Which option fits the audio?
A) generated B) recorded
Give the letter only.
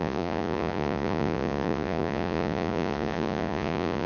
A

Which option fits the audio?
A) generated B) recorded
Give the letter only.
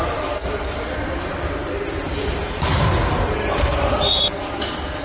B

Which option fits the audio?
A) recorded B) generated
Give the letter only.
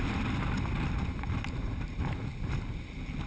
A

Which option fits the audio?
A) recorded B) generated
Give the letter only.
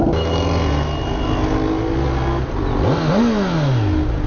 A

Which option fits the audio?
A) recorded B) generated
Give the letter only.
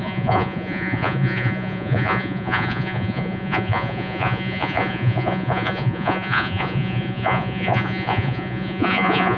B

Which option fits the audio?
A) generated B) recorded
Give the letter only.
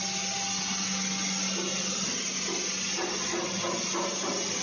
B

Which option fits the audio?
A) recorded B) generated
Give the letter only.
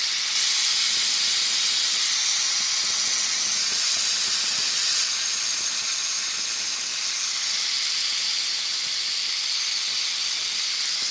A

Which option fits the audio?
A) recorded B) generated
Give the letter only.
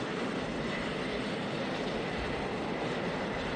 A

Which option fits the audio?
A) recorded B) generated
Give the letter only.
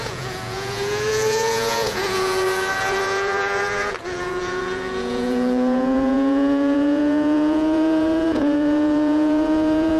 B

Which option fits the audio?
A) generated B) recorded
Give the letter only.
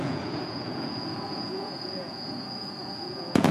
A